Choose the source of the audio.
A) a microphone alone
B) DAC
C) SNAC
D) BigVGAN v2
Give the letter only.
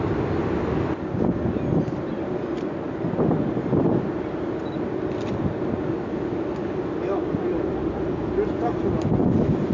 A